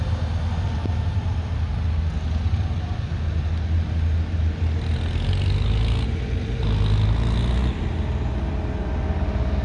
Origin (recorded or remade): recorded